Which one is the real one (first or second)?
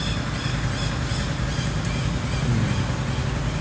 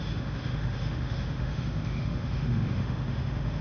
first